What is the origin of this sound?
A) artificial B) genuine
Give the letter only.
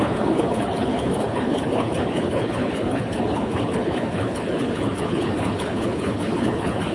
A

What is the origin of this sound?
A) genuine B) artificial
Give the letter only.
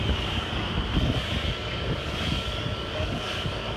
B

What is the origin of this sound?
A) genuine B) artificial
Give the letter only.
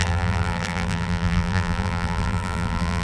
B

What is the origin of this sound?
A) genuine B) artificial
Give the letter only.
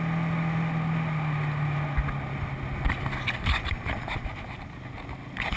A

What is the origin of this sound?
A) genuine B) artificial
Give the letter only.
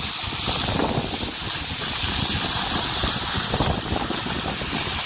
A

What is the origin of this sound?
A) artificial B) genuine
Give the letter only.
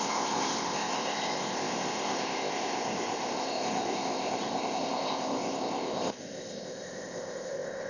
A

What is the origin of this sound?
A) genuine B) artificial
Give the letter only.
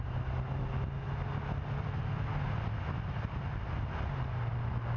A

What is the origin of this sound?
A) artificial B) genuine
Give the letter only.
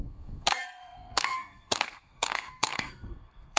A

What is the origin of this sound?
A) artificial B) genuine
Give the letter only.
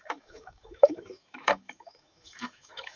A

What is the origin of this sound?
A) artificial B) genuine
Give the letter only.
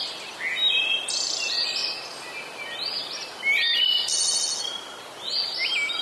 B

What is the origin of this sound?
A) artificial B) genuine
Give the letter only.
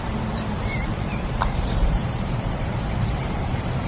A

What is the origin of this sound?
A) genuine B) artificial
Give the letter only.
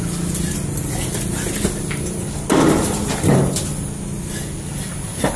A